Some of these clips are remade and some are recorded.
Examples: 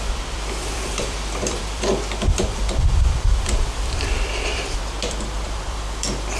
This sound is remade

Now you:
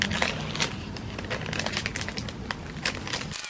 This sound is recorded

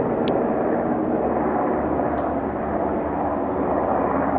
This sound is recorded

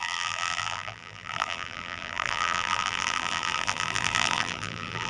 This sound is remade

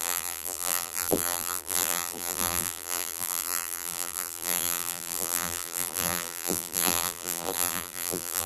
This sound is remade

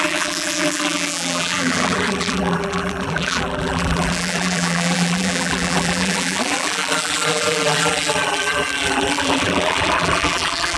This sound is remade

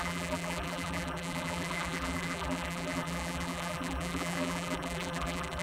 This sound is remade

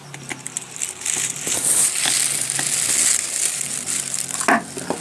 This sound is recorded